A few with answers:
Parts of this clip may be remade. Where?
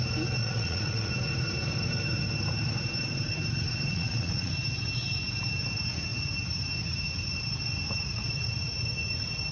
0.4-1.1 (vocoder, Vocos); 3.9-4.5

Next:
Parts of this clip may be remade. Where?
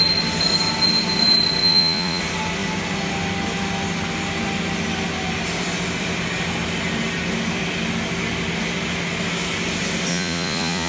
1.6-2.2 (vocoder, Vocos); 10.1-10.9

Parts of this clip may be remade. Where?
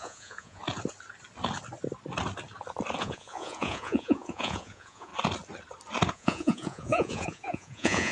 0.0-0.6 (vocoder, Vocos); 3.0-5.1; 6.1-8.1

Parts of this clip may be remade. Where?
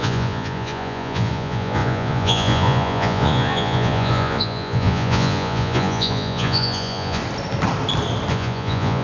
0.0-7.2 (vocoder, Vocos); 8.3-9.0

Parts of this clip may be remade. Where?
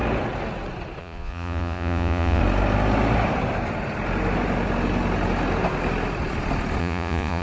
1.0-2.4 (vocoder, Vocos); 6.8-7.4